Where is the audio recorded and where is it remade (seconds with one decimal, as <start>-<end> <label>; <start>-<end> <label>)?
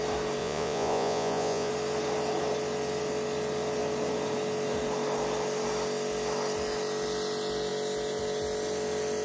0.0-0.4 recorded; 0.4-1.7 remade; 1.7-9.2 recorded